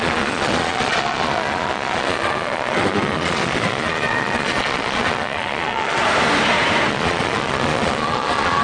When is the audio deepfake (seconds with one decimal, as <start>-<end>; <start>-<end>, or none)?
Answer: 0.0-6.0; 6.9-8.6